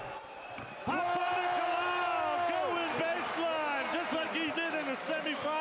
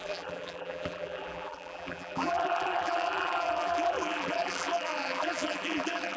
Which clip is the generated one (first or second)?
second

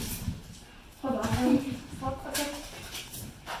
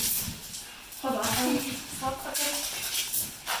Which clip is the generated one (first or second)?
first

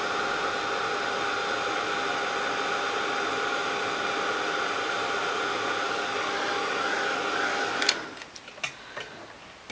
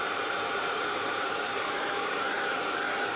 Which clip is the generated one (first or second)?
second